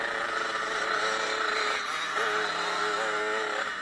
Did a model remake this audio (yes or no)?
no